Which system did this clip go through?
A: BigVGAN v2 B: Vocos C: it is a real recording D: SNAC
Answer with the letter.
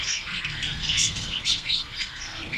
D